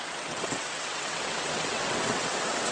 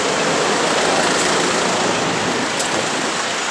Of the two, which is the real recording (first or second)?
second